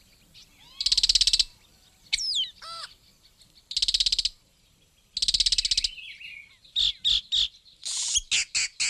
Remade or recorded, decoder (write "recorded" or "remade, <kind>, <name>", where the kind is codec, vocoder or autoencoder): recorded